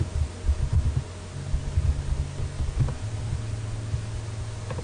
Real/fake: real